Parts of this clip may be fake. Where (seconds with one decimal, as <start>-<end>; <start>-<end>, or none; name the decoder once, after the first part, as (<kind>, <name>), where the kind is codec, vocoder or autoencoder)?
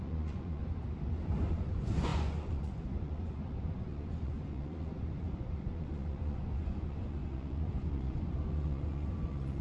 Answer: 0.0-0.6 (vocoder, Vocos); 1.5-9.6